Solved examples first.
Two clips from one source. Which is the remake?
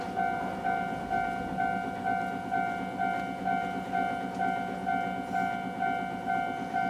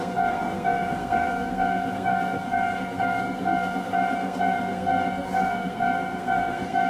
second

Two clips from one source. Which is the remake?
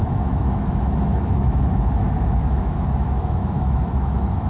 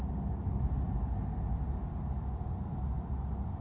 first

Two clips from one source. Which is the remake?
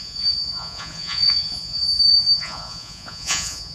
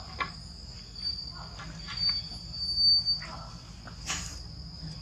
first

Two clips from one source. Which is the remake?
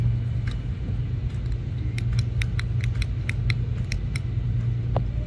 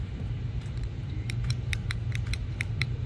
second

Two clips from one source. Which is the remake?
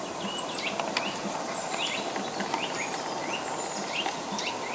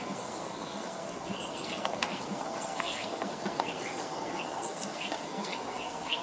second